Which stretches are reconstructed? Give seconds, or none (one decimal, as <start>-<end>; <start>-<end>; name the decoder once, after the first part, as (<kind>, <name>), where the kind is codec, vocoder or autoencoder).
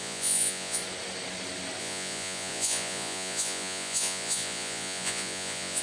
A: 0.0-0.8 (vocoder, Vocos); 1.8-5.8